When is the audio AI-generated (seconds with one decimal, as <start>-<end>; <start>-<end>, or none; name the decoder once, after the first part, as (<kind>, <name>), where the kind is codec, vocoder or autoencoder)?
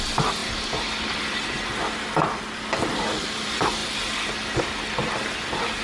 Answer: none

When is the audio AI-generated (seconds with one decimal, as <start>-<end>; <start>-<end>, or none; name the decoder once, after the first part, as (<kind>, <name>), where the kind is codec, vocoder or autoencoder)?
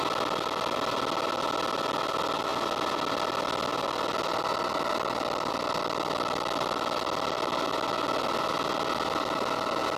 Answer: none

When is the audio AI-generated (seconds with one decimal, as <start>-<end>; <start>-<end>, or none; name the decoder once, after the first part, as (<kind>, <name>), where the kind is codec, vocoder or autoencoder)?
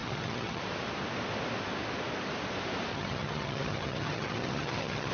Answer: 0.0-0.6 (vocoder, HiFi-GAN); 2.9-5.1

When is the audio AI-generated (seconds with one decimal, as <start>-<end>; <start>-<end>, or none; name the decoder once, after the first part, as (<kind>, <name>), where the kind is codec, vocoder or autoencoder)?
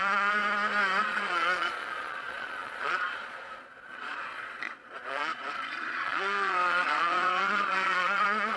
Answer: 0.0-0.4 (vocoder, Vocos); 1.0-8.6